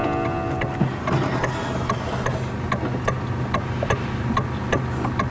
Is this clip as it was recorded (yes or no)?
yes